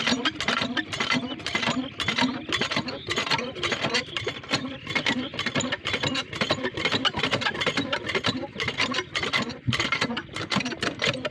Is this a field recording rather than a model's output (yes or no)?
yes